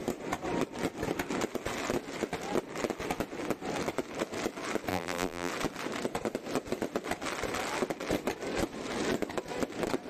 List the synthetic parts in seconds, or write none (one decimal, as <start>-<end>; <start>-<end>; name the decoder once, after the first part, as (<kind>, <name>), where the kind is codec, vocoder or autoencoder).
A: 4.9-5.5 (vocoder, BigVGAN v2)